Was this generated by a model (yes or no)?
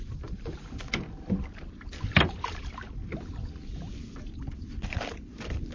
no